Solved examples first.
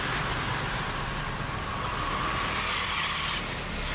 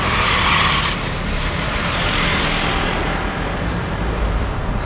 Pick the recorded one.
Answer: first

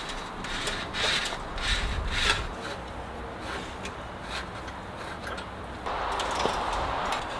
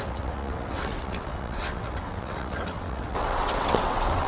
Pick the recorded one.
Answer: first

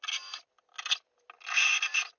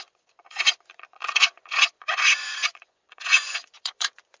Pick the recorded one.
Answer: first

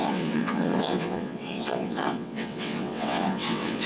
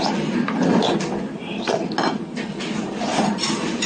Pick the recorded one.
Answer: second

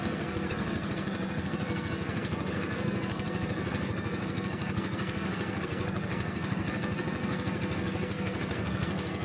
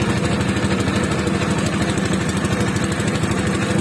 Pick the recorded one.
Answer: second